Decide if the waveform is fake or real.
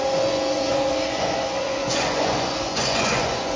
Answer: fake